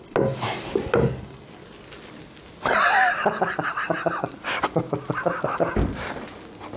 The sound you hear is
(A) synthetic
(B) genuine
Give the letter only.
B